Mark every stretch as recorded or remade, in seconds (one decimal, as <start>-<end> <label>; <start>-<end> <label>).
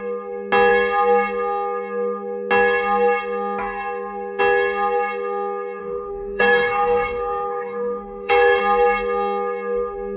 0.0-5.8 recorded; 5.8-8.6 remade; 8.6-10.2 recorded